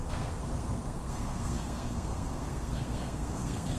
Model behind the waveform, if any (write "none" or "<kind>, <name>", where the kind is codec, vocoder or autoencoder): codec, SNAC